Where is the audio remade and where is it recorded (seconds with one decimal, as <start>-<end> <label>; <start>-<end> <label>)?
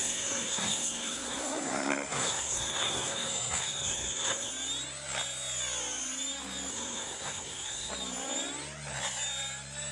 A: 0.0-4.5 remade; 4.5-6.7 recorded; 6.7-7.9 remade; 7.9-9.9 recorded